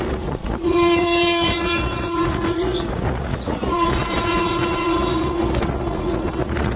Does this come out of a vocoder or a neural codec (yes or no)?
yes